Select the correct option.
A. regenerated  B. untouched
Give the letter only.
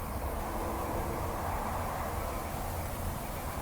B